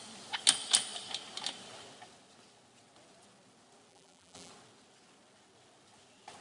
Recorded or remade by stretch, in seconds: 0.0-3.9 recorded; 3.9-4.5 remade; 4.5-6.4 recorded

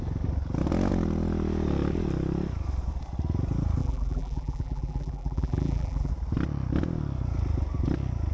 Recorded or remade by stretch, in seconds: 0.0-3.8 recorded; 3.8-6.1 remade; 6.1-8.3 recorded